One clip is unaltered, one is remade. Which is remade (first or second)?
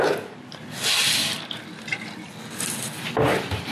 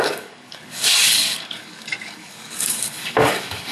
second